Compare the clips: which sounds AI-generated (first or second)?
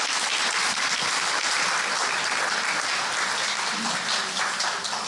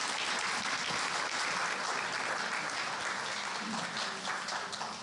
first